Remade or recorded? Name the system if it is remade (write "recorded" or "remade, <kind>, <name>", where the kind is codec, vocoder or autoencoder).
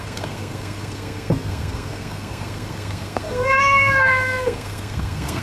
remade, codec, SNAC